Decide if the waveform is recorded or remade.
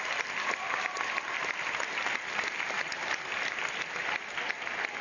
recorded